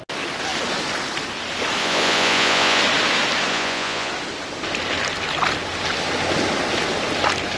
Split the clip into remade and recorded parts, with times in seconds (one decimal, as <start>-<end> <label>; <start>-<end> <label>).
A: 0.0-1.8 recorded; 1.8-2.8 remade; 2.8-3.5 recorded; 3.5-4.1 remade; 4.1-7.6 recorded